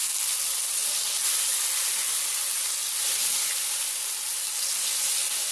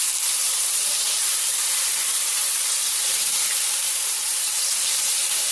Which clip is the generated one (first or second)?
second